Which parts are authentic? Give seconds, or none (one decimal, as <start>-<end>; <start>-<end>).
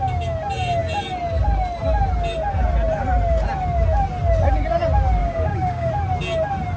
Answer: 0.0-5.2; 5.9-6.8